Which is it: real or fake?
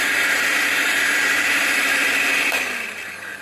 real